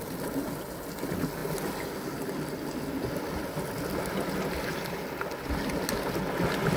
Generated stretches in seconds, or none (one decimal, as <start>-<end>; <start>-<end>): none